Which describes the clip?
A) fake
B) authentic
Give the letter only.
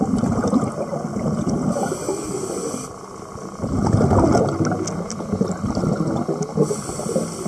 B